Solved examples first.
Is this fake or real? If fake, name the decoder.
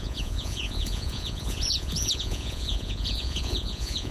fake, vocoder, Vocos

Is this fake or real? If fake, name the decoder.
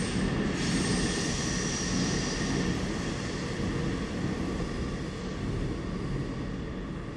real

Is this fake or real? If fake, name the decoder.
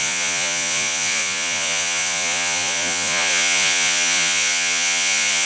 fake, vocoder, Vocos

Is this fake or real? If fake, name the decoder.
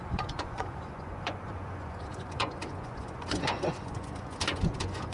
fake, vocoder, Vocos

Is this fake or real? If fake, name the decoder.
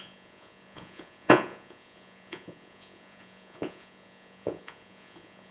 fake, vocoder, Vocos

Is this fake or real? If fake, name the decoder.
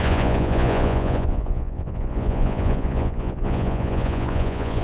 fake, vocoder, Vocos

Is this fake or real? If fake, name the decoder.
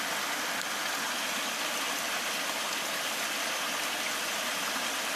real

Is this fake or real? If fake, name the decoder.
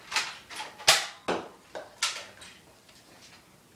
real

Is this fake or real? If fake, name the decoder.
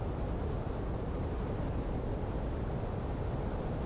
real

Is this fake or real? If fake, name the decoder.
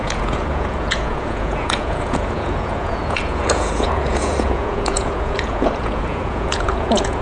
fake, vocoder, Vocos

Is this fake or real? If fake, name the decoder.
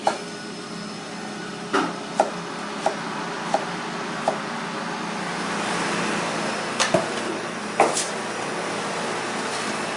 real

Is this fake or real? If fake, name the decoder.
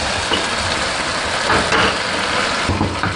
real